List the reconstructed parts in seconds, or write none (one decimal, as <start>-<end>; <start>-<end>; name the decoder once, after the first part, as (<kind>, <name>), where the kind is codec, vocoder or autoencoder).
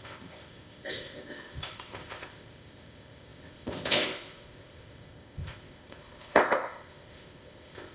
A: 0.0-7.9 (codec, ZipCodec)